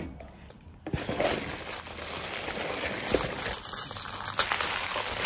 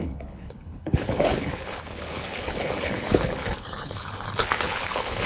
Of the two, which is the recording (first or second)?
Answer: first